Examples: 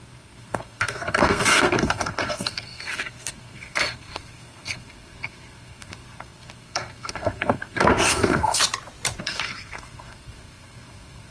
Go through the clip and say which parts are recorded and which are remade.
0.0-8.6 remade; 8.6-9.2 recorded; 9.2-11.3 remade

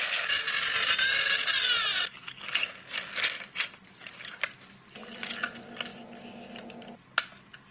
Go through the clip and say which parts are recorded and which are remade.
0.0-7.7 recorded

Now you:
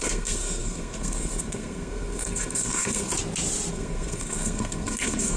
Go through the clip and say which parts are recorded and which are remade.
0.0-3.1 remade; 3.1-3.7 recorded; 3.7-5.4 remade

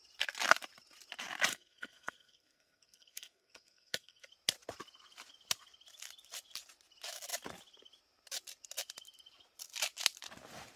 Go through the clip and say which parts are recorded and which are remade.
0.0-1.5 recorded; 1.5-4.3 remade; 4.3-10.8 recorded

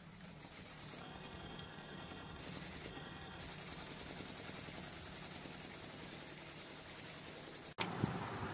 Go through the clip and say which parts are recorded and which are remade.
0.0-1.0 recorded; 1.0-2.4 remade; 2.4-2.9 recorded; 2.9-3.4 remade; 3.4-8.5 recorded